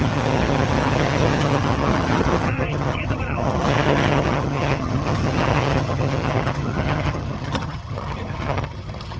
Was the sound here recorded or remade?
remade